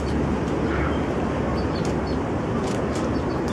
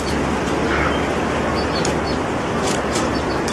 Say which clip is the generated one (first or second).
first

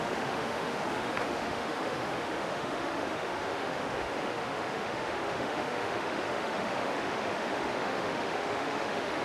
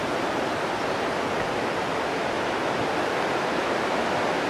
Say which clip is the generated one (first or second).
first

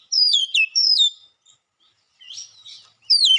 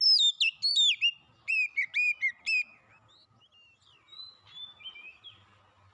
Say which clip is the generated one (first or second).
first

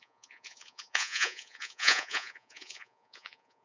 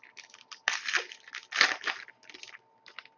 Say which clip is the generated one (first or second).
first